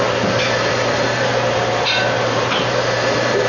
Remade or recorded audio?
remade